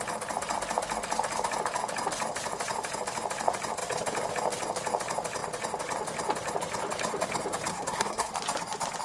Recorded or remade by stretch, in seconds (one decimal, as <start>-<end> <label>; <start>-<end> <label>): 0.0-7.7 recorded; 7.7-8.3 remade; 8.3-9.0 recorded